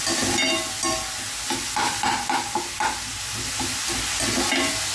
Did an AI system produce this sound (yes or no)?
no